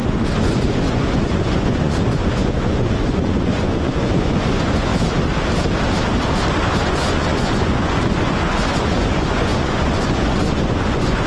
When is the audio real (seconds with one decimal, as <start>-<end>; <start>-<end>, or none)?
4.9-6.8